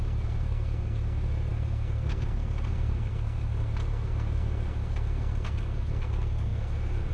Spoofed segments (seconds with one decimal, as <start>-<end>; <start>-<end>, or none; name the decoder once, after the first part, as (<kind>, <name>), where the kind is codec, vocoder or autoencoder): 0.0-7.1 (codec, SNAC)